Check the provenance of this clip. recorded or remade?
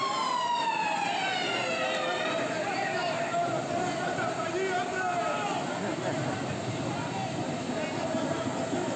recorded